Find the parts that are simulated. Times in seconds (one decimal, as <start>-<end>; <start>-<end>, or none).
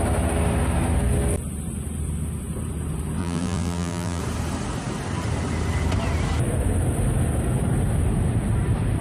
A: 3.2-4.2